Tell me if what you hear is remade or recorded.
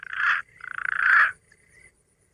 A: recorded